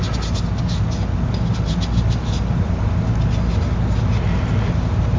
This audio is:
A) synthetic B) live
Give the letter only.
B